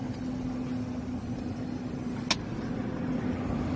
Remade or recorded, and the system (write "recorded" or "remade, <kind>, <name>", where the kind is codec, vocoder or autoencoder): recorded